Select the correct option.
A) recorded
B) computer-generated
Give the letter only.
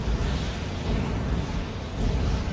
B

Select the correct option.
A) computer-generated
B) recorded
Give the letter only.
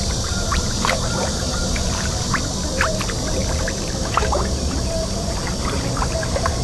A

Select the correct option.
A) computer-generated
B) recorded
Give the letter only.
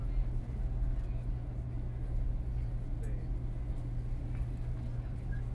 B